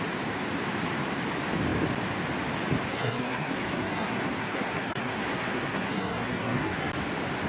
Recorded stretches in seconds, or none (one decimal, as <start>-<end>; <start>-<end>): 0.0-2.9; 6.9-7.5